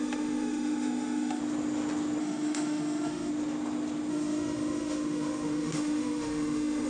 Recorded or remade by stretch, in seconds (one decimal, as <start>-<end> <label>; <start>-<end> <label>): 0.0-1.4 remade; 1.4-2.2 recorded; 2.2-3.3 remade; 3.3-4.1 recorded; 4.1-6.9 remade